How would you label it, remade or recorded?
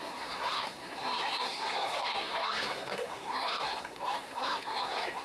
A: remade